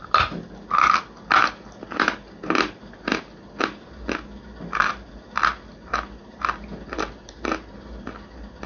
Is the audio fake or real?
real